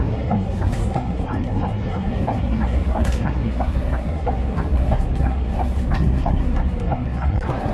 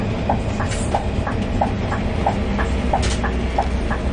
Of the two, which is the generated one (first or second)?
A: first